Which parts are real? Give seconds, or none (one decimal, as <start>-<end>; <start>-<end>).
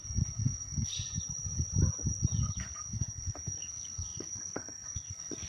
0.9-2.5